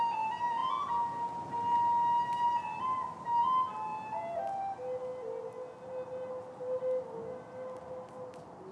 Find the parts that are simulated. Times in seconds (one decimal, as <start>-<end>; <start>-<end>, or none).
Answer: none